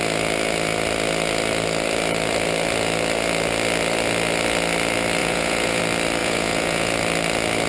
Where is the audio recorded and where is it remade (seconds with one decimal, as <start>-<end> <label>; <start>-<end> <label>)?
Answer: 0.0-5.2 recorded; 5.2-5.8 remade; 5.8-6.2 recorded; 6.2-6.9 remade; 6.9-7.7 recorded